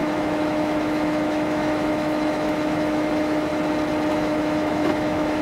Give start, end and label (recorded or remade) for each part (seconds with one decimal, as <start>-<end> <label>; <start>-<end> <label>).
0.0-3.5 remade; 3.5-4.1 recorded; 4.1-5.4 remade